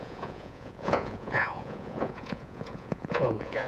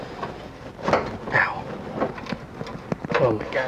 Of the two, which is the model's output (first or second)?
first